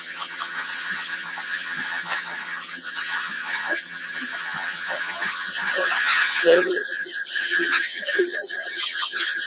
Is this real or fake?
fake